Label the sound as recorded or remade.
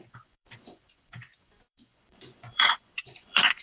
remade